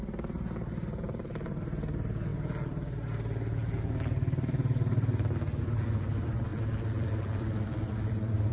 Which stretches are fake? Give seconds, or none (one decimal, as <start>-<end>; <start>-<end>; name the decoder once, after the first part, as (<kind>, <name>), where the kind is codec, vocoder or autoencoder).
0.0-2.3 (vocoder, BigVGAN v2); 5.6-8.5